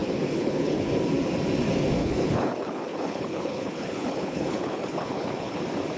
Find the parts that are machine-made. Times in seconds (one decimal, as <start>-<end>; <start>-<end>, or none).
0.0-0.9; 2.0-5.6

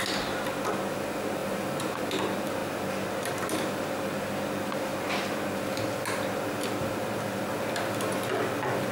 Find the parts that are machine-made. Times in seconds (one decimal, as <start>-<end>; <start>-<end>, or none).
1.4-2.0